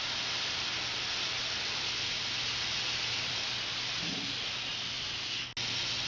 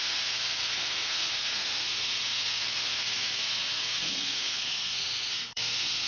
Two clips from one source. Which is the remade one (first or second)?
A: second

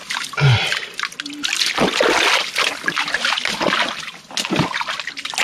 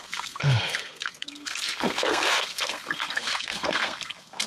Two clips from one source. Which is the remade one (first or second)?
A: second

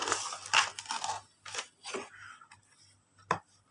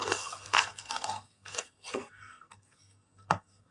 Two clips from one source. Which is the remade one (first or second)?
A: second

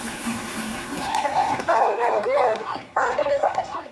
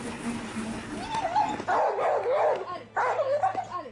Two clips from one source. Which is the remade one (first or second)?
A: first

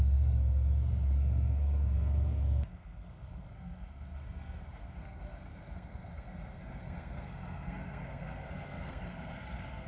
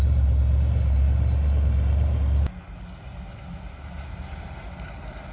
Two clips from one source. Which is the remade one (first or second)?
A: first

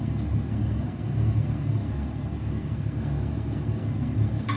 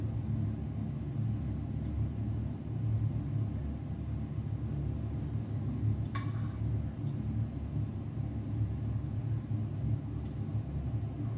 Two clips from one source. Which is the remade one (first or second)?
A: first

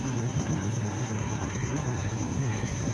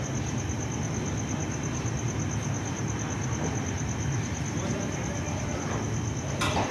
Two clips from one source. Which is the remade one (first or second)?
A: first